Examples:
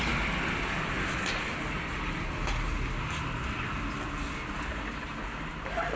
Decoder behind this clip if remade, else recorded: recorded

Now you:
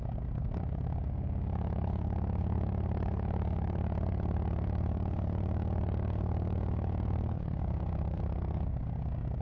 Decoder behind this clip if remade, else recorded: remade, codec, DAC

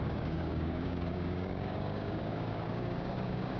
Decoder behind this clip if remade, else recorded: remade, codec, DAC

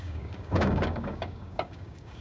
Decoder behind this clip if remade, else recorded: remade, codec, DAC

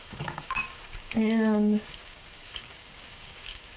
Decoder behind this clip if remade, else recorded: remade, codec, DAC